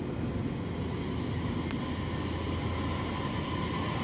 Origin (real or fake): real